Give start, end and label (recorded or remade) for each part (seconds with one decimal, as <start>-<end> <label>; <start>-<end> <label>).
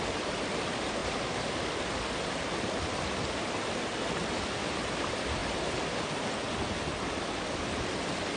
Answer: 0.0-8.4 recorded